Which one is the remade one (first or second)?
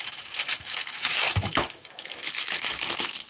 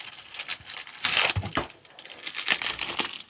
first